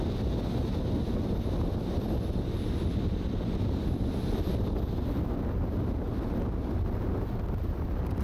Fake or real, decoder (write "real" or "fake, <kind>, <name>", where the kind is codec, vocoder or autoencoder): real